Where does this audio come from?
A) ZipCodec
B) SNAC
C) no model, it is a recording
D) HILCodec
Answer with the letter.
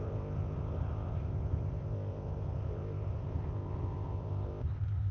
A